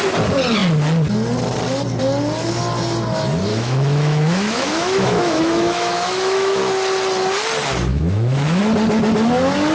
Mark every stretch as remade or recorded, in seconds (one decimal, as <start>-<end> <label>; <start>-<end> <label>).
0.0-3.5 recorded; 3.5-6.6 remade; 6.6-7.9 recorded; 7.9-8.6 remade; 8.6-9.7 recorded